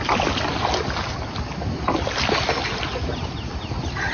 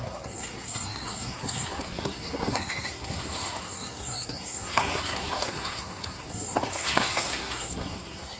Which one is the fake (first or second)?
second